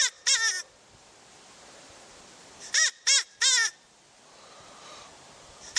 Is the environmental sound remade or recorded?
remade